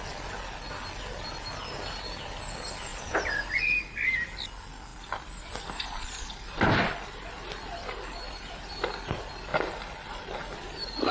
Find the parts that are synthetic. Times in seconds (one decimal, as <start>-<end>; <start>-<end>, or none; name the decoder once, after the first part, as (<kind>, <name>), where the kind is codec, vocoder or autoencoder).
2.9-3.8 (vocoder, BigVGAN v2); 4.9-8.3